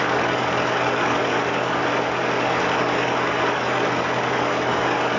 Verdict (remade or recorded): remade